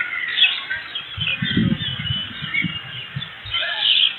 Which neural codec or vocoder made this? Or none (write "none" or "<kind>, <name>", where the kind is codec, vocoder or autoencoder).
none